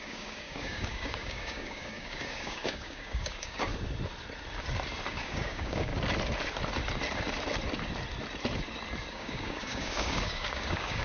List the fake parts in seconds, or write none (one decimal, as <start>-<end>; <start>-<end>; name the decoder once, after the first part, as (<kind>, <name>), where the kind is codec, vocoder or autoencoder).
0.0-3.7 (codec, DAC); 5.1-5.9; 9.1-11.0